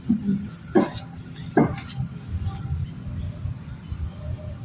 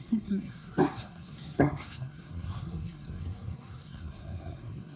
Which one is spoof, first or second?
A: second